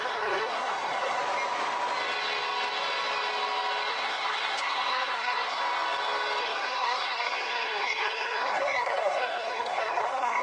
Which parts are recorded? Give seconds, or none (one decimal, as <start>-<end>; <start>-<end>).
1.2-3.9; 5.6-6.4

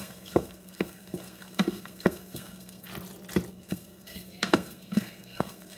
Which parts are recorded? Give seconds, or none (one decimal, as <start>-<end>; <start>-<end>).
2.9-3.5